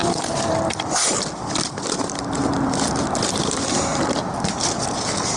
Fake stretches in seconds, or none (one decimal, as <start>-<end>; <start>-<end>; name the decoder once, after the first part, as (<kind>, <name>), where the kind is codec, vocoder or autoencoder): 0.0-3.2 (vocoder, BigVGAN v2); 3.9-4.5